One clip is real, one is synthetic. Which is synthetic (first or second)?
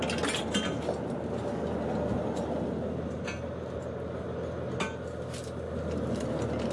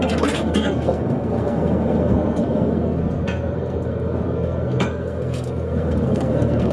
second